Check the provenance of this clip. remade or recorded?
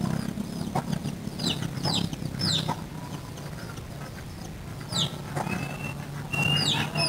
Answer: recorded